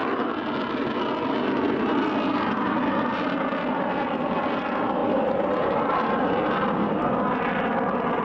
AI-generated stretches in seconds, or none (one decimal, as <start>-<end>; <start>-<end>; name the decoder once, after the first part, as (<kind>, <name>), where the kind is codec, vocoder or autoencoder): none